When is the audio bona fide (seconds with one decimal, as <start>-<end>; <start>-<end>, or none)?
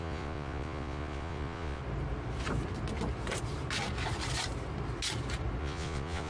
1.8-5.6